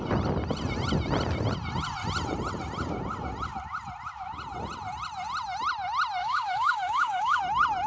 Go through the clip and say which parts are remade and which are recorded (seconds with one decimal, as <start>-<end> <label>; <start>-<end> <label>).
0.0-6.2 recorded; 6.2-7.4 remade; 7.4-7.9 recorded